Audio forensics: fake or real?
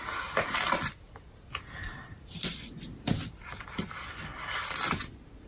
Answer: real